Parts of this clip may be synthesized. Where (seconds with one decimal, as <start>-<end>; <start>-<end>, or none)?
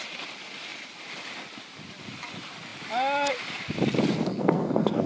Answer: 4.3-5.1